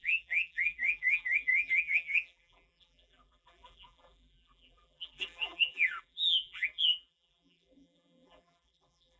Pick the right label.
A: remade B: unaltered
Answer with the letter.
A